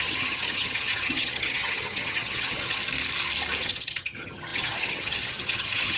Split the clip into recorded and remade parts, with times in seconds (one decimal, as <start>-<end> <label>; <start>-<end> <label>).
0.0-2.8 remade; 2.8-3.6 recorded; 3.6-6.0 remade